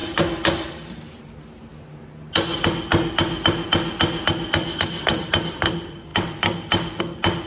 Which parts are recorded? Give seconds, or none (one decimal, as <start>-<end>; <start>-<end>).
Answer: 1.2-7.5